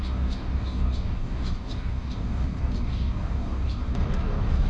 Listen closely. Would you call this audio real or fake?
fake